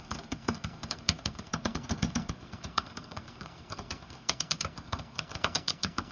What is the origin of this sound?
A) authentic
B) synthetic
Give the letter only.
B